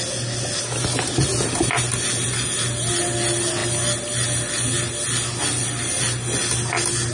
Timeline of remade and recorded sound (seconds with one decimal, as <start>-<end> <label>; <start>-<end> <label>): 0.0-7.1 recorded